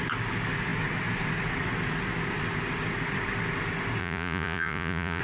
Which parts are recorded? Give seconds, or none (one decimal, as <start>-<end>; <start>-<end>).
0.0-4.0